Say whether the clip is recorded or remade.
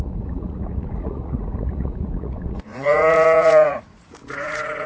remade